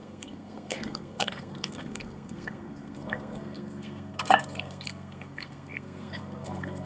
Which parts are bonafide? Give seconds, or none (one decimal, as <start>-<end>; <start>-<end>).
none